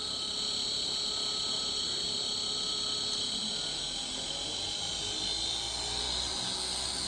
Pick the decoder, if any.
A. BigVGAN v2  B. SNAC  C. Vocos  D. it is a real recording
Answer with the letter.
D